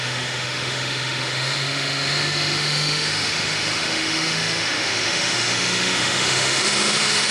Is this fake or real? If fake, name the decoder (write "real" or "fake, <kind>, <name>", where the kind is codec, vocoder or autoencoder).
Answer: fake, autoencoder, DAC-VAE